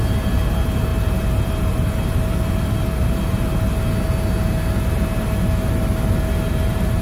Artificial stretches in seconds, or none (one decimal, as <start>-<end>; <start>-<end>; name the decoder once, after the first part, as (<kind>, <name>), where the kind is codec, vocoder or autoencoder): 0.0-3.5 (vocoder, BigVGAN v2); 6.5-7.0